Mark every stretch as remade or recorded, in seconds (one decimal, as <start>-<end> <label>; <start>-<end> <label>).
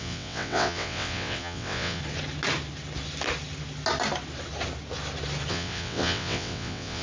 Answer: 0.0-2.0 remade; 2.0-5.5 recorded; 5.5-7.0 remade